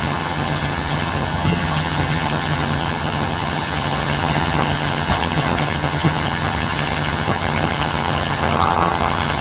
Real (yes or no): no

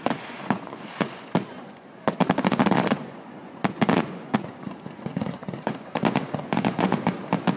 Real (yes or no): no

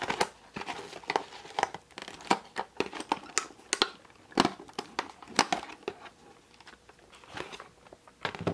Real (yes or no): yes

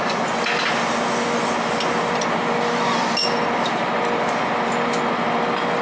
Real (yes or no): yes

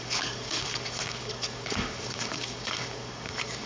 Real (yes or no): no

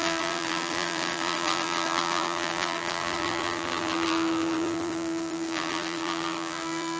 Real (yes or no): no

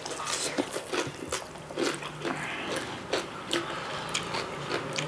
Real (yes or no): yes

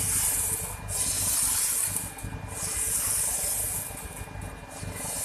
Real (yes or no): yes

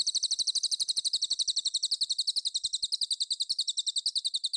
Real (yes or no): yes